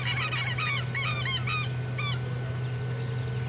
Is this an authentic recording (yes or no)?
yes